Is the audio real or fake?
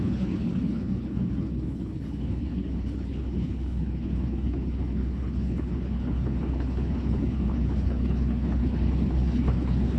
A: fake